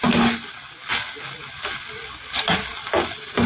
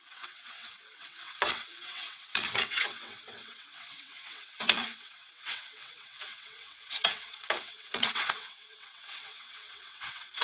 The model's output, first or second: second